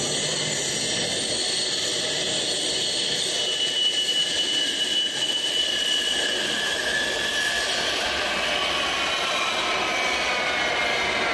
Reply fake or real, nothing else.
real